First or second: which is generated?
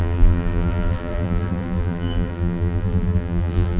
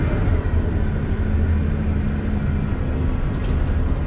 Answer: first